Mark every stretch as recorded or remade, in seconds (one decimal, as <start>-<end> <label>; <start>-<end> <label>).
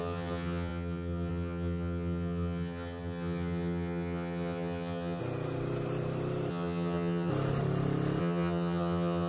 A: 0.0-5.2 remade; 5.2-6.5 recorded; 6.5-7.3 remade; 7.3-8.2 recorded; 8.2-9.3 remade